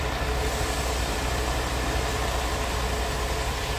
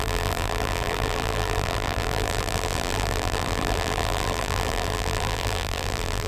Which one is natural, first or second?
first